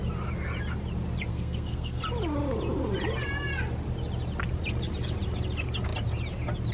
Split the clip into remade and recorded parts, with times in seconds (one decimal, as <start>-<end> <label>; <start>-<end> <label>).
0.0-1.3 recorded; 1.3-2.0 remade; 2.0-6.7 recorded